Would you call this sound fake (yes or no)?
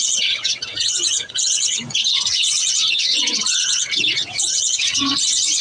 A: yes